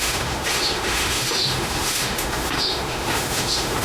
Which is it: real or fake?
fake